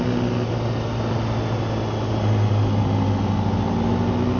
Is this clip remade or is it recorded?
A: recorded